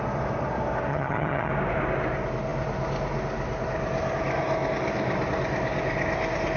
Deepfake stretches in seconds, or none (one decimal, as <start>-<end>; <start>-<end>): 0.9-1.5